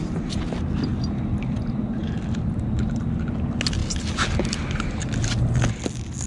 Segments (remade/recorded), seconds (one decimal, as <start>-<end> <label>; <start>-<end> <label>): 0.0-6.3 recorded